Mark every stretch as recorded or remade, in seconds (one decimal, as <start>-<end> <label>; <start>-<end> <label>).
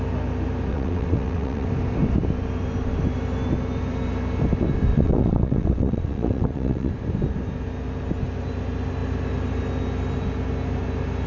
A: 0.0-0.7 recorded; 0.7-1.7 remade; 1.7-4.9 recorded; 4.9-6.9 remade; 6.9-11.3 recorded